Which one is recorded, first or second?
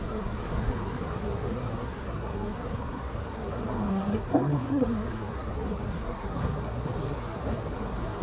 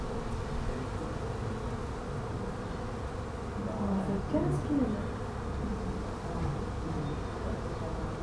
second